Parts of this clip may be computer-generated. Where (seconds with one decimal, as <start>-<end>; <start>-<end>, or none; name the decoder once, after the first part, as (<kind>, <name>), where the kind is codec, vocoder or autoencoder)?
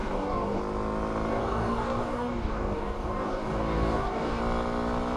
0.0-0.6 (codec, DAC); 1.3-4.4